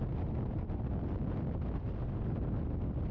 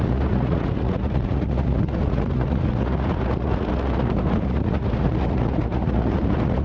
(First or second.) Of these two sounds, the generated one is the second